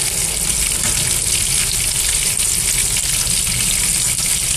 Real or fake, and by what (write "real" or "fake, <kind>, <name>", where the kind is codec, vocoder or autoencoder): real